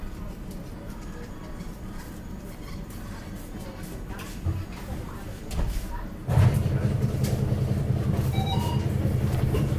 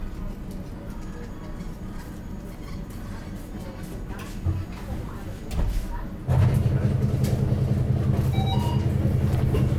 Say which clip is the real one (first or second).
second